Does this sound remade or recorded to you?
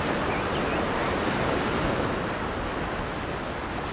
recorded